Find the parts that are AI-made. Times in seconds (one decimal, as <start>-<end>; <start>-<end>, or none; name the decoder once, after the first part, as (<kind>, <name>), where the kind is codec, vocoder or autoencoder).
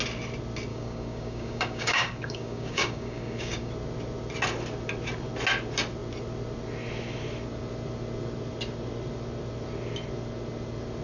0.7-3.7 (codec, DAC)